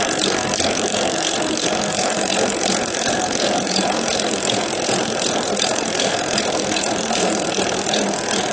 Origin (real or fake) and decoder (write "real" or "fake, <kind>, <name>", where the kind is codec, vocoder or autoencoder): fake, codec, SNAC